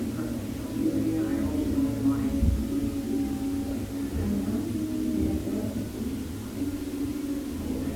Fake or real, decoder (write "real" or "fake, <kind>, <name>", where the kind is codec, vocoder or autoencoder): real